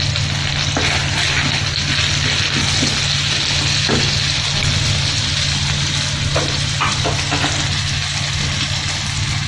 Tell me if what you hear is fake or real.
real